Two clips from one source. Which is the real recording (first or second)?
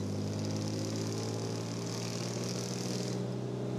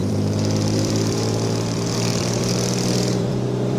first